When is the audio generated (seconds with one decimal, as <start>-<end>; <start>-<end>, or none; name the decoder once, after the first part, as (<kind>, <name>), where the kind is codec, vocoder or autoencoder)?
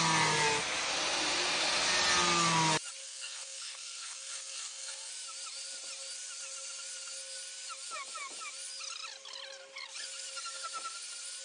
3.0-5.1 (codec, SNAC)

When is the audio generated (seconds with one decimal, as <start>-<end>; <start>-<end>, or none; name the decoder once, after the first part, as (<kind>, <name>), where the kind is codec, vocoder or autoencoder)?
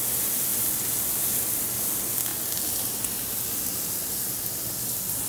none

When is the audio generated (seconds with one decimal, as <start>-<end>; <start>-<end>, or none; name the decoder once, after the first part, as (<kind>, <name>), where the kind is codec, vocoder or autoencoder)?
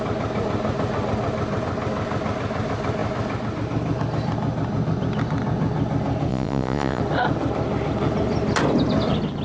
6.3-7.0 (vocoder, Vocos)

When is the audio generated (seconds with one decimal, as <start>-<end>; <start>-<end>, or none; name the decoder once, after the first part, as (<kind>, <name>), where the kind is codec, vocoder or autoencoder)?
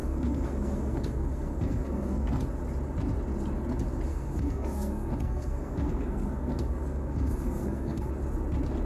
0.0-2.4 (codec, SNAC); 4.1-8.1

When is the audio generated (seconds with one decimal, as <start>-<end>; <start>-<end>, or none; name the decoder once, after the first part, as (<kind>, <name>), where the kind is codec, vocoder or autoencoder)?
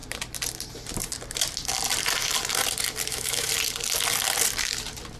3.1-3.5 (autoencoder, DAC-VAE)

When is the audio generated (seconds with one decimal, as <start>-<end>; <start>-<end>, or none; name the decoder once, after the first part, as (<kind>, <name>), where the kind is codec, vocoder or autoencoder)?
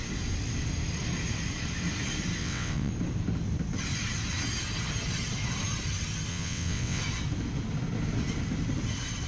2.4-2.9 (vocoder, WaveNeXt); 6.3-7.0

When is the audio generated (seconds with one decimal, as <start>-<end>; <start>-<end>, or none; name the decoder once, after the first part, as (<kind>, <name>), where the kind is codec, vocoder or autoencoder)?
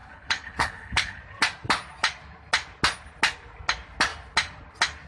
0.0-1.2 (codec, HILCodec)